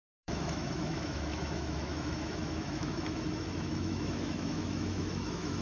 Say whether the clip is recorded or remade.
remade